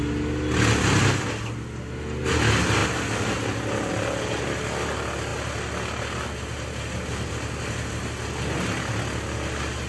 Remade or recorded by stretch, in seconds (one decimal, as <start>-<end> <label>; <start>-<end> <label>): 0.0-9.9 recorded

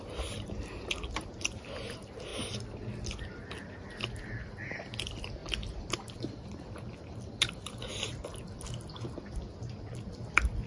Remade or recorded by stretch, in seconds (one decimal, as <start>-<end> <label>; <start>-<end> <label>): 0.0-10.7 recorded

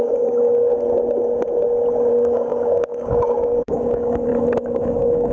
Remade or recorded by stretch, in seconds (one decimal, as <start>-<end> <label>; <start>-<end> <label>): 0.0-0.7 remade; 0.7-2.1 recorded; 2.1-4.3 remade; 4.3-4.8 recorded; 4.8-5.3 remade

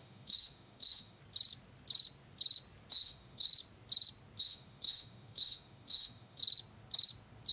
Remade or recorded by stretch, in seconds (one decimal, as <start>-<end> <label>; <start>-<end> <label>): 0.0-1.2 remade; 1.2-2.9 recorded; 2.9-3.5 remade; 3.5-4.4 recorded; 4.4-6.4 remade; 6.4-7.5 recorded

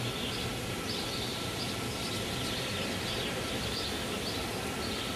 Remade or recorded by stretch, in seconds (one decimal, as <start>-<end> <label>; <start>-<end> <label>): 0.0-5.2 recorded

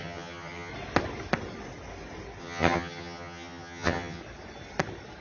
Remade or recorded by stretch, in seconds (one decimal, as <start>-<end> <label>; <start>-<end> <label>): 0.0-0.7 remade; 0.7-2.4 recorded; 2.4-4.2 remade; 4.2-5.2 recorded